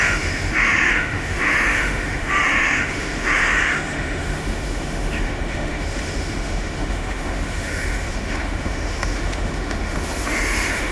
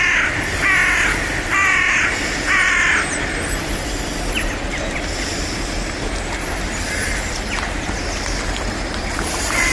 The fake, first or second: first